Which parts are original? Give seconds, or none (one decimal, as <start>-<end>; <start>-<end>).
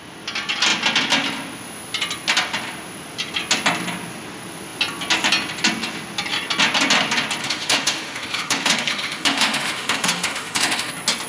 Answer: 0.0-7.4; 10.9-11.3